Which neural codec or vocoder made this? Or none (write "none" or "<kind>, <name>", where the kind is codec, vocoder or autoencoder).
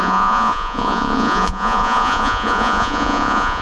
vocoder, Vocos